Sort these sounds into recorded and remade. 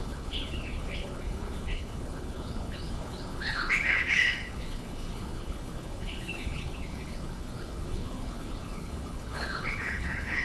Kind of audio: remade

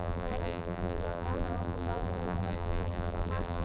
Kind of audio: remade